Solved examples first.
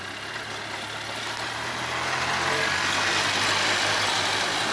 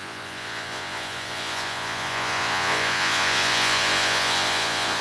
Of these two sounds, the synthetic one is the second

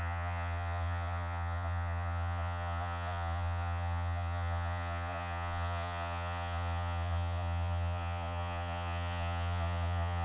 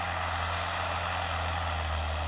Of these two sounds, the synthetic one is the first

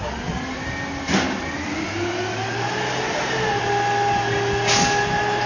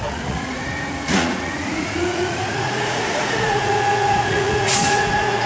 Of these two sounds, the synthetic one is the second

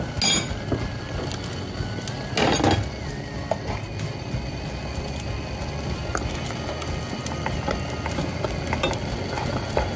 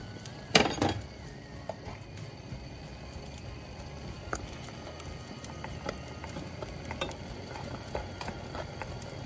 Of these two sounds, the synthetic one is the second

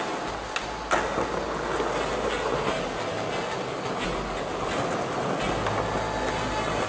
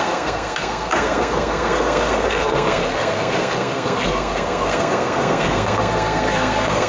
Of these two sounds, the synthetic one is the second